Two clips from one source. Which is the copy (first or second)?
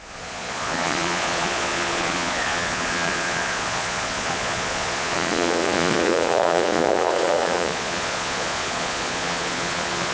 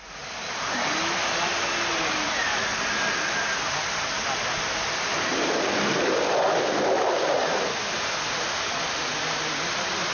first